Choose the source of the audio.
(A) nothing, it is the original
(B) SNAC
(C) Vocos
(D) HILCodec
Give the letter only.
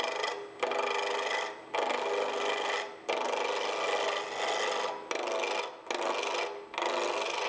A